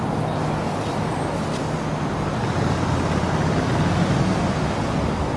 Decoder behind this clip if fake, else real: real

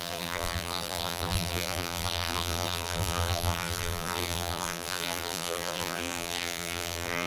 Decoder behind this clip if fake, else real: fake, vocoder, BigVGAN v2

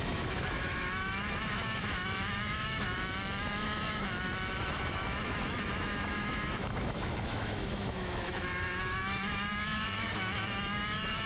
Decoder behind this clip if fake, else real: fake, autoencoder, DAC-VAE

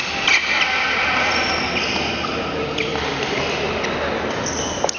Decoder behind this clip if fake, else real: real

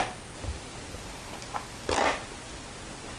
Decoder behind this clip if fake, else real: real